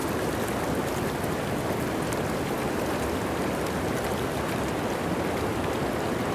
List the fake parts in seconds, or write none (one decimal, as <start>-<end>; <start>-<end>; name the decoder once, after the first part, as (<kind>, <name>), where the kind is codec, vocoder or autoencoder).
none